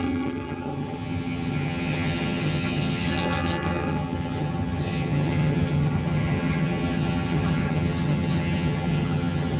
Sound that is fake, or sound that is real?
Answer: fake